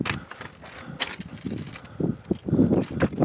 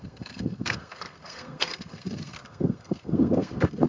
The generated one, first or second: second